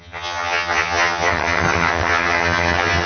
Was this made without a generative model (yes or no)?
no